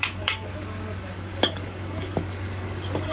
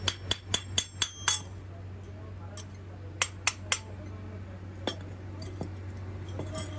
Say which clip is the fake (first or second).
first